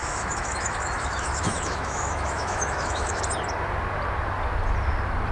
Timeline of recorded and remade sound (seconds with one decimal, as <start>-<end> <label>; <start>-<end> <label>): 0.0-3.2 remade; 3.2-5.3 recorded

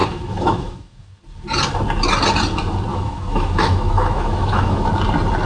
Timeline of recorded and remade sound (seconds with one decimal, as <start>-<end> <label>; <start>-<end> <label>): 0.0-1.2 remade; 1.2-2.9 recorded; 2.9-4.9 remade; 4.9-5.5 recorded